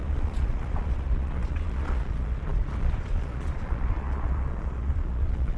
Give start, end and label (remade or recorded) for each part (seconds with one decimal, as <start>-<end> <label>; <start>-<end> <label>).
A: 0.0-5.6 remade